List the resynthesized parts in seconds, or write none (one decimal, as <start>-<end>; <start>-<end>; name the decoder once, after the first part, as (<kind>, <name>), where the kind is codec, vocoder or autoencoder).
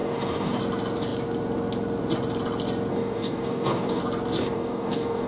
0.0-0.6 (codec, DAC); 2.9-4.0; 4.4-5.3